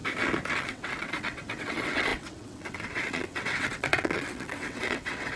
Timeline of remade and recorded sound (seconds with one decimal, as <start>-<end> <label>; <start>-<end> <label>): 0.0-0.5 recorded; 0.5-5.4 remade